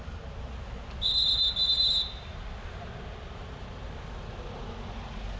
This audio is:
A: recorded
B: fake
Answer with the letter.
A